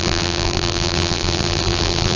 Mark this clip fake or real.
fake